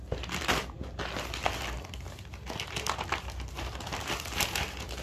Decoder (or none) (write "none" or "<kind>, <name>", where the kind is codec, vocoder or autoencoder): none